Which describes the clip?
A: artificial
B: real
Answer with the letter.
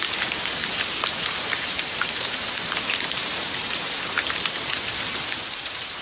A